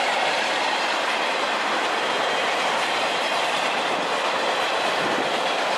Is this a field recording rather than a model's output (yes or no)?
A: no